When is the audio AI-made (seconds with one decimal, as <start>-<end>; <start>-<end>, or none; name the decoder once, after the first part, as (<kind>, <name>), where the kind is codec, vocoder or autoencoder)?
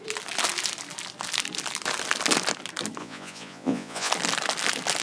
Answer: 3.0-4.1 (vocoder, Vocos)